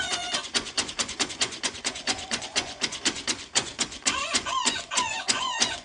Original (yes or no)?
no